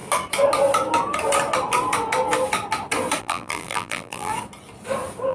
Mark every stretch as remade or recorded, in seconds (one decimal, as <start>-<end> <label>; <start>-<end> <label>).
0.0-3.2 recorded; 3.2-4.3 remade; 4.3-5.3 recorded